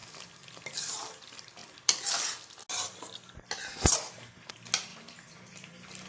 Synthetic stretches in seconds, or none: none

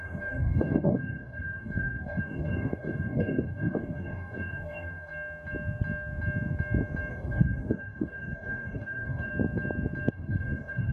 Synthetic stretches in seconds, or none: 0.0-5.1 (codec, DAC); 7.1-9.3; 10.1-10.9